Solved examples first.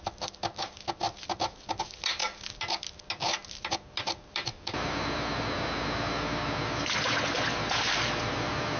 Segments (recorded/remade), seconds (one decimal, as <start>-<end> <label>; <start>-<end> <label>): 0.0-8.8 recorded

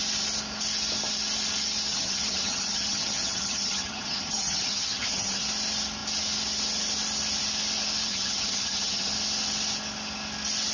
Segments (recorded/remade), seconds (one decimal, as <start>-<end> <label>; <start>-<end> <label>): 0.0-1.9 recorded; 1.9-5.4 remade; 5.4-8.0 recorded; 8.0-9.1 remade; 9.1-10.7 recorded

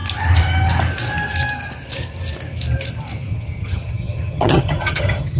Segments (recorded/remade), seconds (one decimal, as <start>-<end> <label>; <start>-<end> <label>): 0.0-3.3 recorded; 3.3-5.4 remade

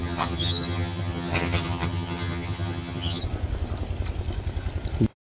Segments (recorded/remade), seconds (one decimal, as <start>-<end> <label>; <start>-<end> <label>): 0.0-3.2 remade; 3.2-5.3 recorded

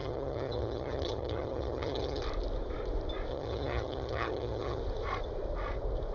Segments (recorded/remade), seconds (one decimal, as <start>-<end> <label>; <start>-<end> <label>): 0.0-2.2 remade; 2.2-3.3 recorded; 3.3-4.8 remade; 4.8-6.1 recorded

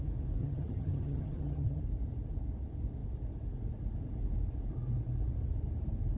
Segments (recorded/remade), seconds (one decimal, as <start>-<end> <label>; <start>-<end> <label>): 0.0-0.4 recorded; 0.4-1.8 remade; 1.8-6.2 recorded

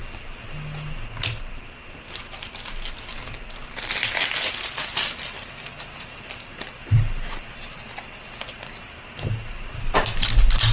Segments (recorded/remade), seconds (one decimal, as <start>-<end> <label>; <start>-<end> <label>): 0.0-10.7 recorded

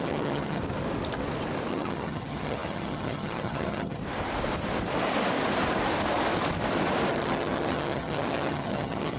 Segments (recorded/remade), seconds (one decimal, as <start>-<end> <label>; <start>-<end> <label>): 0.0-0.6 remade; 0.6-1.7 recorded; 1.7-4.0 remade; 4.0-7.1 recorded; 7.1-9.2 remade